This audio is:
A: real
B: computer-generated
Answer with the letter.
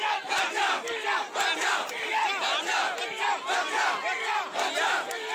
A